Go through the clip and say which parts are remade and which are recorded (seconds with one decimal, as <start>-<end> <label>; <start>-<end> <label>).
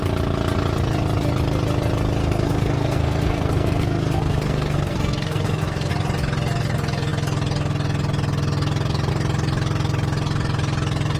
0.0-2.2 recorded; 2.2-5.9 remade; 5.9-11.2 recorded